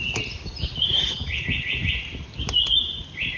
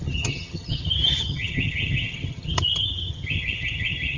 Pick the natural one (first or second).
first